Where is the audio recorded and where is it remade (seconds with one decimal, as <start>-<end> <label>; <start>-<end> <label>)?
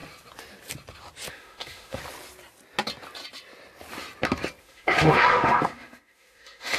0.0-1.3 recorded; 1.3-2.0 remade; 2.0-4.6 recorded; 4.6-6.8 remade